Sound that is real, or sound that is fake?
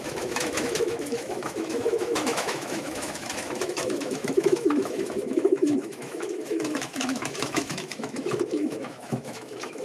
fake